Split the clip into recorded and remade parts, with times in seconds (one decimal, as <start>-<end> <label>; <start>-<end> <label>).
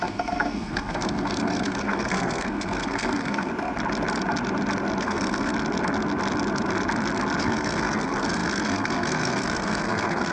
0.0-3.5 remade; 3.5-5.0 recorded; 5.0-5.5 remade; 5.5-7.4 recorded; 7.4-10.3 remade